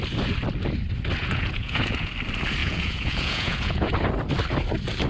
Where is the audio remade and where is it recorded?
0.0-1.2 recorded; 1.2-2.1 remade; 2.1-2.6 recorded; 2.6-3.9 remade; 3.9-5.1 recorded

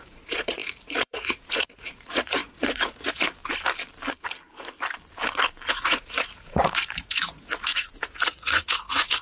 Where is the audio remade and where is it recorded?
0.0-3.4 remade; 3.4-5.7 recorded; 5.7-9.2 remade

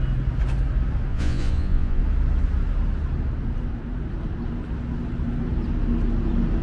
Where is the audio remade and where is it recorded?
0.0-1.1 recorded; 1.1-2.0 remade; 2.0-6.6 recorded

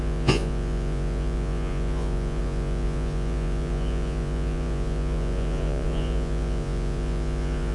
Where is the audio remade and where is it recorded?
0.0-7.7 remade

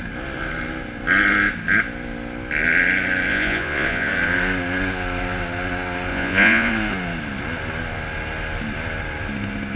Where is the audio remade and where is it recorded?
0.0-3.3 recorded; 3.3-4.1 remade; 4.1-6.1 recorded; 6.1-6.7 remade; 6.7-9.8 recorded

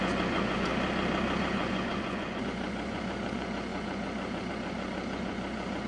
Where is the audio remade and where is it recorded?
0.0-0.7 remade; 0.7-1.4 recorded; 1.4-5.9 remade

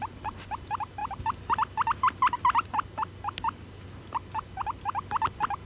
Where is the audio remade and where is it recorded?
0.0-5.7 recorded